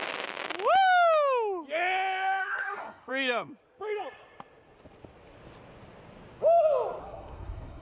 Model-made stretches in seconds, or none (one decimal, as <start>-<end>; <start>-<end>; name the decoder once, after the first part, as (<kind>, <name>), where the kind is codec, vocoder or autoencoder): 2.4-3.1 (codec, SNAC); 7.0-7.8